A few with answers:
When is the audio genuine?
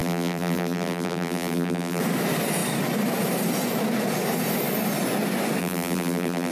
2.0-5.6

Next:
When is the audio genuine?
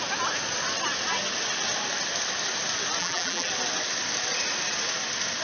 0.0-3.0; 3.5-5.4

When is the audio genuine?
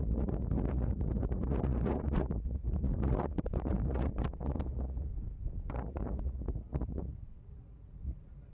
5.1-5.6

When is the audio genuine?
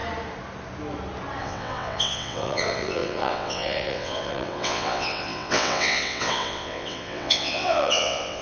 0.0-1.4